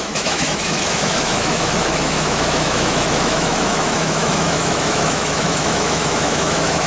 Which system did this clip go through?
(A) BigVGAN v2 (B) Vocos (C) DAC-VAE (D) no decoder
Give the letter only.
C